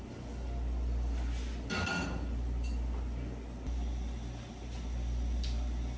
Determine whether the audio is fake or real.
real